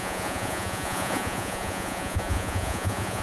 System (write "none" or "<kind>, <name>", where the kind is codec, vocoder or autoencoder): vocoder, Vocos